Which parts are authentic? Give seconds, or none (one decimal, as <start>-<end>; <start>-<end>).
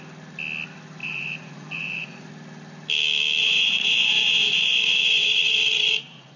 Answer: 0.0-1.0; 2.3-3.4